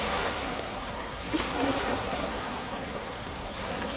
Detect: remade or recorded remade